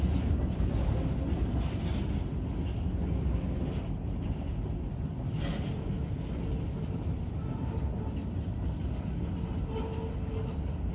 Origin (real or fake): real